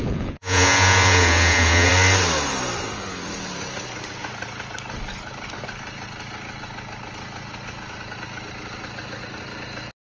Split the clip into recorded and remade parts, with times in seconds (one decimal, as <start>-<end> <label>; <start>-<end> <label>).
0.0-1.9 remade; 1.9-10.2 recorded